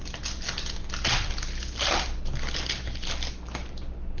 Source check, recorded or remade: recorded